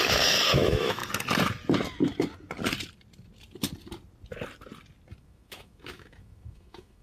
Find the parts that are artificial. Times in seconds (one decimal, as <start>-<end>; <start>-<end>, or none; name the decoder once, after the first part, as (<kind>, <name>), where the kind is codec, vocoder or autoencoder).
0.0-1.0 (autoencoder, DAC-VAE); 5.2-7.0